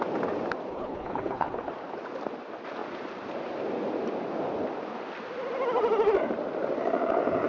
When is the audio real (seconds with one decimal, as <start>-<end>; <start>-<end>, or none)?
0.0-0.7; 1.7-7.5